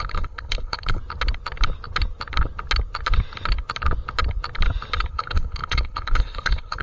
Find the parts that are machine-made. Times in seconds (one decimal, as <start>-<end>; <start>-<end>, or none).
0.0-1.0; 5.1-6.8